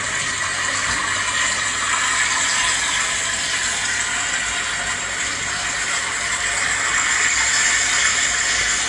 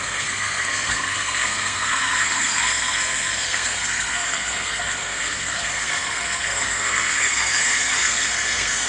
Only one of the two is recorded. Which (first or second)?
first